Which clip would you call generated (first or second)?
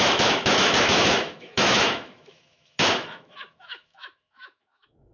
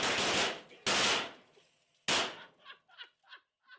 first